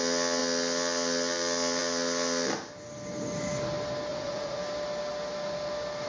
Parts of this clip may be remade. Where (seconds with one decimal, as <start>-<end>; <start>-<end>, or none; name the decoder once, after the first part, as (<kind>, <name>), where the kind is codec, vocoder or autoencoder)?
4.1-4.6 (vocoder, Vocos)